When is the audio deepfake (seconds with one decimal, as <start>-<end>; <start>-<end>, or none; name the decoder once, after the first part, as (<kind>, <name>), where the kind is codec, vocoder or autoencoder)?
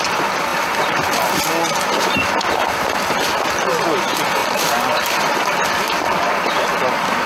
0.5-1.4 (vocoder, BigVGAN v2); 4.4-7.3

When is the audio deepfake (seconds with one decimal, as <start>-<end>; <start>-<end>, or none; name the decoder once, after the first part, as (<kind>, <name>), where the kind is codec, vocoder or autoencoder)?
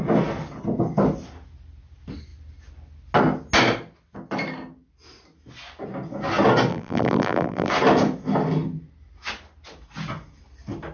6.7-7.7 (vocoder, BigVGAN v2)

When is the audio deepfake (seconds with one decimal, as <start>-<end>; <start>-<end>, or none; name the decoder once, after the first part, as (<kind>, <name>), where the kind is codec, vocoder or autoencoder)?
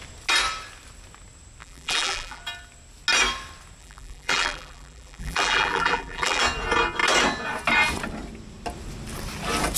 1.6-2.4 (vocoder, BigVGAN v2); 3.8-6.4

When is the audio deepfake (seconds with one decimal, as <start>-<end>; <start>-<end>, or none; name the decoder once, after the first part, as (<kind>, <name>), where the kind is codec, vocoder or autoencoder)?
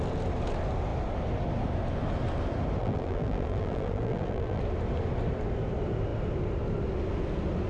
2.8-4.6 (vocoder, BigVGAN v2)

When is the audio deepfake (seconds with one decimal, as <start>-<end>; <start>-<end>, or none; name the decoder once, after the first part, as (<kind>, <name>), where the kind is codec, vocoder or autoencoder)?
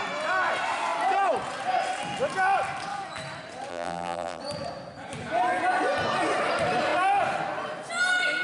3.7-4.4 (vocoder, BigVGAN v2)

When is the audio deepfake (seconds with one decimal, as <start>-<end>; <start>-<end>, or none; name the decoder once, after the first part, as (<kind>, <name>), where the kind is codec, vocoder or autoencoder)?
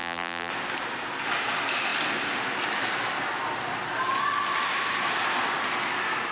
0.0-0.5 (vocoder, BigVGAN v2)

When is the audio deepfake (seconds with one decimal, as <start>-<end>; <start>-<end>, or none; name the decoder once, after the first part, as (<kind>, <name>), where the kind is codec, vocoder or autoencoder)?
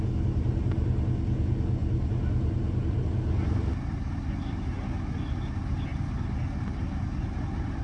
none